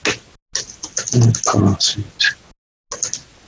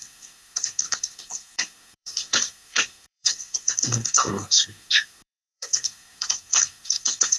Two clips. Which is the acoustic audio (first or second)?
first